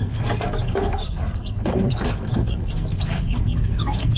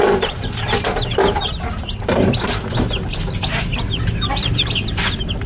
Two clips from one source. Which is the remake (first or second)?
first